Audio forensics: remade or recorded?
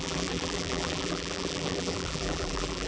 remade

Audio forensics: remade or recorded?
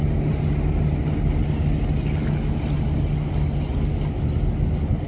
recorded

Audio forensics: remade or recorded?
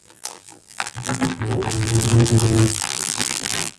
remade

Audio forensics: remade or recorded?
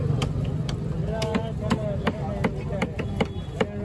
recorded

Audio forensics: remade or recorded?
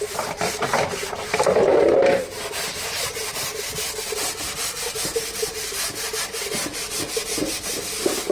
remade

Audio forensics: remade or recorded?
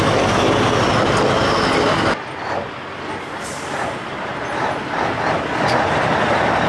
recorded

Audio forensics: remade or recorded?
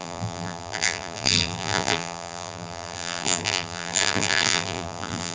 remade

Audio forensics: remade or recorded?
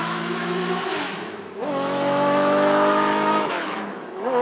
remade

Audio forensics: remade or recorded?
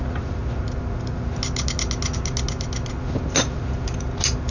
recorded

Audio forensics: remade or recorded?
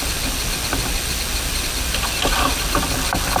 recorded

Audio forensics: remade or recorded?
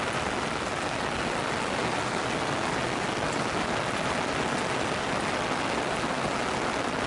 recorded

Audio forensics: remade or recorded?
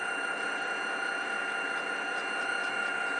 recorded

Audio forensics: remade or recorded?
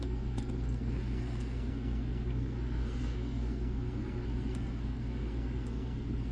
remade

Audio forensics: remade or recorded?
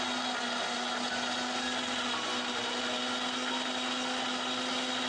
recorded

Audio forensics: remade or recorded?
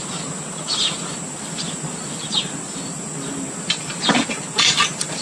recorded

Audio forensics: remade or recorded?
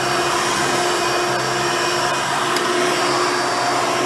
recorded